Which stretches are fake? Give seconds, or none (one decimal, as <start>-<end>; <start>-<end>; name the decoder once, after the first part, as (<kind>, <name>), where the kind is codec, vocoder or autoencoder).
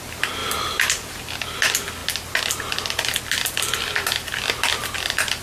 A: 0.4-0.9 (vocoder, BigVGAN v2)